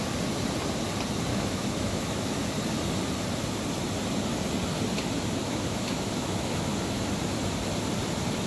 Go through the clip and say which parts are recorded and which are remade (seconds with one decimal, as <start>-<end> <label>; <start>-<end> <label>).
0.0-1.3 recorded; 1.3-2.4 remade; 2.4-5.4 recorded; 5.4-6.7 remade; 6.7-8.5 recorded